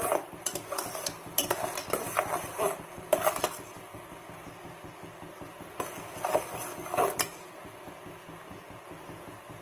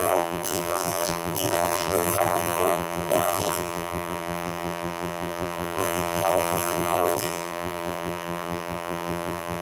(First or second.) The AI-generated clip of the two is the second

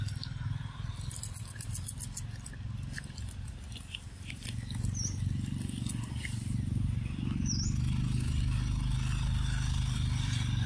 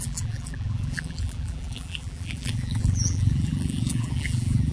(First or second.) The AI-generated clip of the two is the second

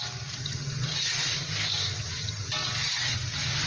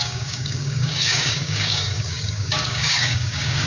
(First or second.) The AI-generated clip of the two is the second